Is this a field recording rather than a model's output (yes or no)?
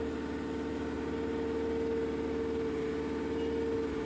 yes